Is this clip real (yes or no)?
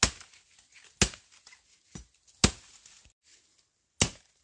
yes